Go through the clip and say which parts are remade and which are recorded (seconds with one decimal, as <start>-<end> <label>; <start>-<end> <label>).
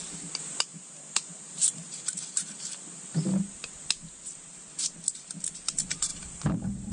0.0-0.7 recorded; 0.7-1.6 remade; 1.6-6.1 recorded; 6.1-6.9 remade